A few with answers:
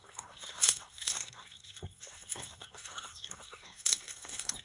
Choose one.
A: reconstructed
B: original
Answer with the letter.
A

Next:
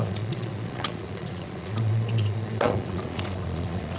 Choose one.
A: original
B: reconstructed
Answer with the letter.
B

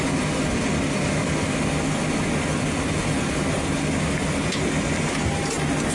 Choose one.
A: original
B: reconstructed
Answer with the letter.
A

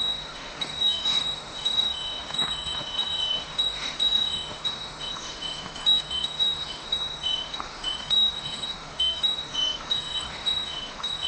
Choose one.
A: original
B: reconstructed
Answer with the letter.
B